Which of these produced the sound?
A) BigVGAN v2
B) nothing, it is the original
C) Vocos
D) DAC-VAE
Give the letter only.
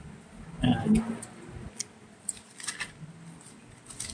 B